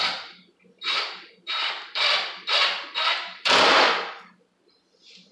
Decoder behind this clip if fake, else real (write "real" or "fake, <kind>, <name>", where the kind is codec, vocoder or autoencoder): fake, vocoder, BigVGAN v2